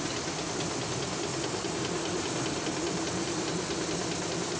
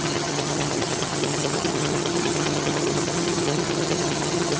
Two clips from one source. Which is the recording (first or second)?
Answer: first